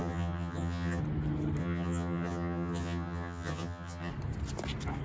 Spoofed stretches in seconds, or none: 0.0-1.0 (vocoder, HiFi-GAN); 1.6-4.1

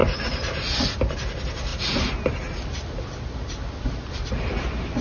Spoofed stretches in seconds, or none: none

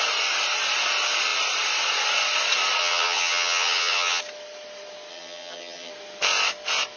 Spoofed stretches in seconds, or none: 2.8-4.2 (vocoder, HiFi-GAN); 5.1-5.9

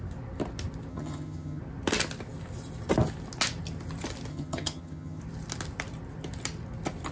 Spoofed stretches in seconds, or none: 0.9-1.6 (vocoder, HiFi-GAN); 4.3-5.2

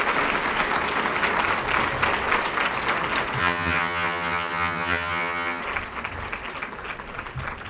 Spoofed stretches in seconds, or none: 3.4-5.6 (vocoder, HiFi-GAN)